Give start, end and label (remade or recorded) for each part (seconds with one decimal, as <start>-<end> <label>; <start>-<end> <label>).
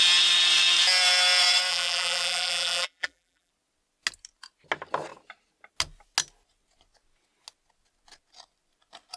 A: 0.0-1.7 recorded; 1.7-3.5 remade; 3.5-9.2 recorded